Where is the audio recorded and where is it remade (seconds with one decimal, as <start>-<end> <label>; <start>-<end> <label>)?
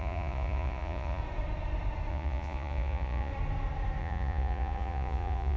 0.0-1.2 remade; 1.2-2.1 recorded; 2.1-3.3 remade; 3.3-4.0 recorded; 4.0-5.6 remade